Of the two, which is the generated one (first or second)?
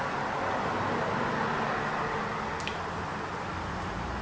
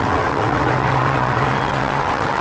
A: second